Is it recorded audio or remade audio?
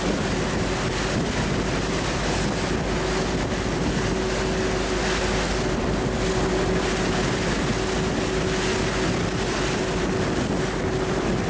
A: recorded